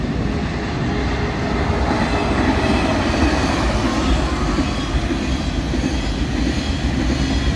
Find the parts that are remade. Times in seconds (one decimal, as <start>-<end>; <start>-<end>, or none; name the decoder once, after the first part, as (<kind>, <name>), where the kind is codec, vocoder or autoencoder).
none